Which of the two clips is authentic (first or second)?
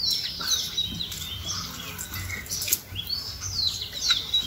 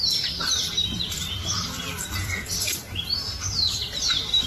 first